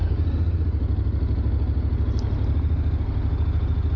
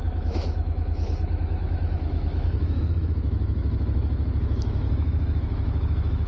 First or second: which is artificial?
second